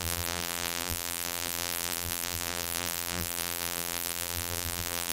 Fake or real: fake